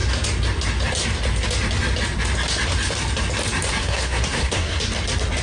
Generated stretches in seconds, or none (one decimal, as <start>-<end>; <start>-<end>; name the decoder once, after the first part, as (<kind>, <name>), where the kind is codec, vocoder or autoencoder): 3.8-4.8 (codec, SNAC)